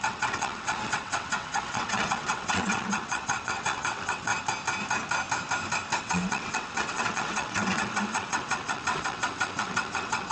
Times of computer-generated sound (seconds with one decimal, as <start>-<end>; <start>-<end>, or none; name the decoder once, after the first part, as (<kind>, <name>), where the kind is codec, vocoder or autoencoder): 0.0-4.3 (vocoder, WaveNeXt); 6.0-10.3

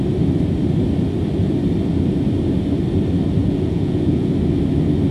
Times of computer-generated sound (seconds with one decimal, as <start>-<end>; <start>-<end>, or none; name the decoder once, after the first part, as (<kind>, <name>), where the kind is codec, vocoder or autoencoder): 3.4-4.3 (vocoder, Vocos)

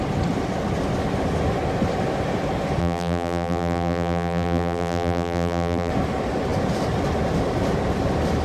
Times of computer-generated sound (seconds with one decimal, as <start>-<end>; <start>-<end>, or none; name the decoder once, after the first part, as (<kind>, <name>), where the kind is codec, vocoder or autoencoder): 2.8-5.9 (vocoder, BigVGAN v2)

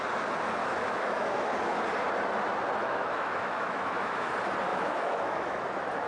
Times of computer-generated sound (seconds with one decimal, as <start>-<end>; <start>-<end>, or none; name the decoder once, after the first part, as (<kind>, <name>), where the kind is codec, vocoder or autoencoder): 0.6-1.5 (autoencoder, DAC-VAE); 2.8-4.3; 4.7-5.6

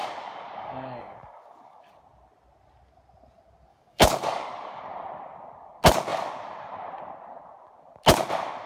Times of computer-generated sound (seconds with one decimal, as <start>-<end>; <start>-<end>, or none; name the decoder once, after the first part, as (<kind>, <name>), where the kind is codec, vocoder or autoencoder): 0.0-1.9 (codec, DAC); 3.7-4.8